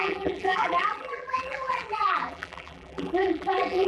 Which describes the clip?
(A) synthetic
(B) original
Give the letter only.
A